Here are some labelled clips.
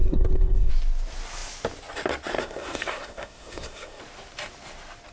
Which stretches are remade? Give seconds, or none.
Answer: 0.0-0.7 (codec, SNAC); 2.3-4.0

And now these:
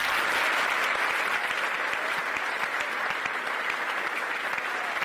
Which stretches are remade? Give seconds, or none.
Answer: none

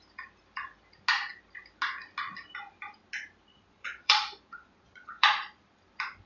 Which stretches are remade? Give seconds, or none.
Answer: 3.5-5.7 (vocoder, Vocos)